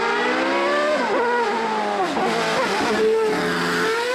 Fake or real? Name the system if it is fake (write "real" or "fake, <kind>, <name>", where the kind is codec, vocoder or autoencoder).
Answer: real